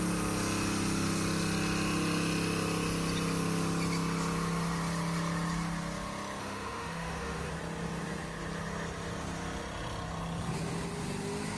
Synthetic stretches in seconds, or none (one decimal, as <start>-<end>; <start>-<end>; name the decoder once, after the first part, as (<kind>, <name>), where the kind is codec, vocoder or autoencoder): 6.4-7.5 (autoencoder, DAC-VAE)